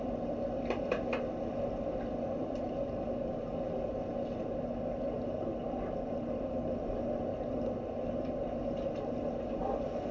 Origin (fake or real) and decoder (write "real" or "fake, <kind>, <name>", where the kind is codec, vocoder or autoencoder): real